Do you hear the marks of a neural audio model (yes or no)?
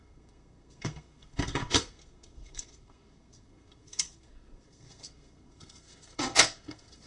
yes